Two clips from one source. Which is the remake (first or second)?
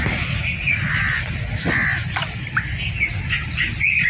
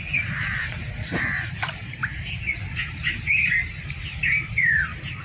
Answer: second